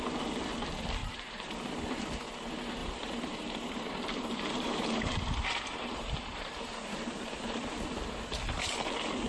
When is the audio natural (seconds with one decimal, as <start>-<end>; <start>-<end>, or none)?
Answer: 0.0-1.0; 1.7-2.8; 7.7-9.3